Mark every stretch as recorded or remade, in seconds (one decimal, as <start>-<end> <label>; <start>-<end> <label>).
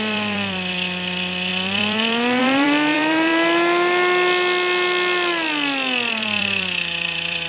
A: 0.0-3.3 remade; 3.3-6.1 recorded; 6.1-7.5 remade